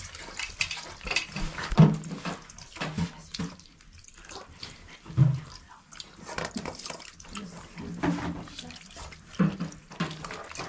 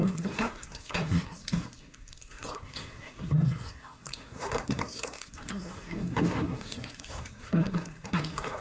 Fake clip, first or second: second